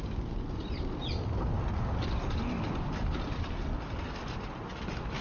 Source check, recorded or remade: recorded